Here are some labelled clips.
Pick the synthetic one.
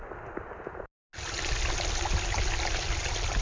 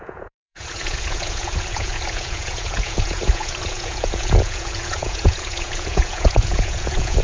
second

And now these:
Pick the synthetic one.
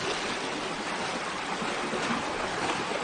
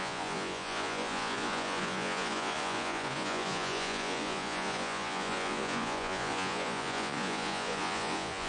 second